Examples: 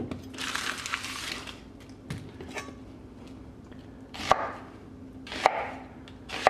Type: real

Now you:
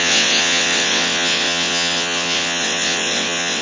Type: fake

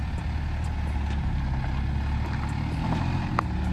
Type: real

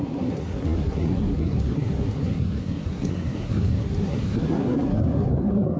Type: fake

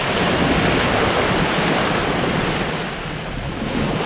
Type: real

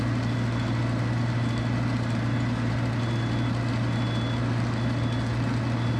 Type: real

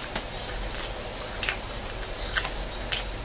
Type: real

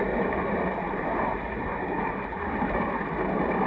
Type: real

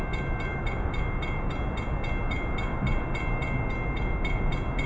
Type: real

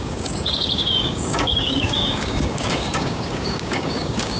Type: fake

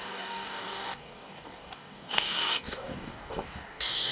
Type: fake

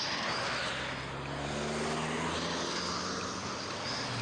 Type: real